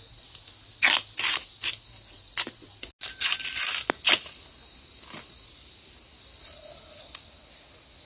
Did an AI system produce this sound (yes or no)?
no